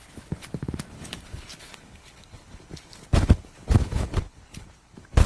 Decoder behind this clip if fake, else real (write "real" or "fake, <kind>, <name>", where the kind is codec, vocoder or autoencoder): fake, codec, HILCodec